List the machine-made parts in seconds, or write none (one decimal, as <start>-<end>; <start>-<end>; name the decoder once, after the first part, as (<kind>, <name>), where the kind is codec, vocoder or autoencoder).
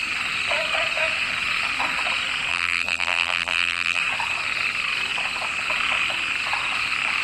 2.5-4.0 (vocoder, BigVGAN v2)